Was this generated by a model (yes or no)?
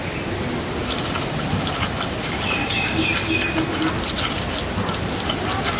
no